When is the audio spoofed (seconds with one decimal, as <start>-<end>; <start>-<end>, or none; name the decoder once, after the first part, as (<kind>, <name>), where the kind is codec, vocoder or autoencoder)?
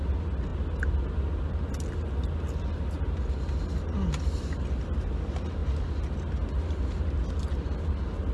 none